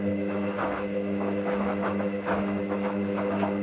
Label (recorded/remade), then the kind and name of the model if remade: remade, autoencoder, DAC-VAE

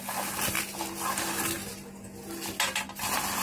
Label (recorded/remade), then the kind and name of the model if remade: recorded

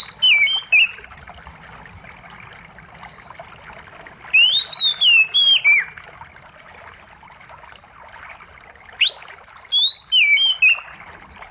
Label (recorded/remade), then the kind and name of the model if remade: recorded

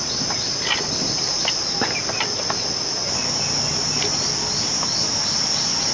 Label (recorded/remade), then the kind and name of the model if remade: recorded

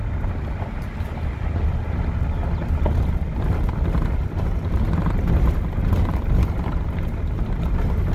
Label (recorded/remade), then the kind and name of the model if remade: recorded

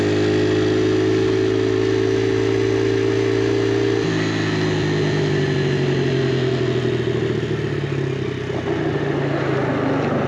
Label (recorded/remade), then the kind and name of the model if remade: recorded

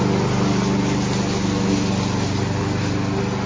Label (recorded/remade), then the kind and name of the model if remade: recorded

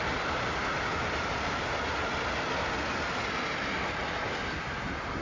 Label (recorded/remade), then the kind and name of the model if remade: recorded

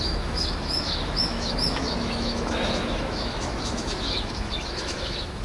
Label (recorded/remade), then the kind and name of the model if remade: remade, autoencoder, DAC-VAE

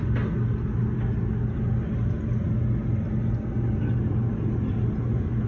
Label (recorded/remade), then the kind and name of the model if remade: recorded